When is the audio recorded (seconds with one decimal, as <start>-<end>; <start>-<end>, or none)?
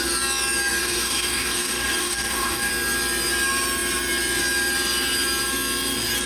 0.0-0.8; 2.7-6.3